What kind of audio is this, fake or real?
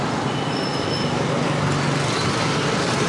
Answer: real